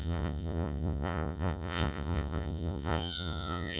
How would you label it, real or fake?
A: fake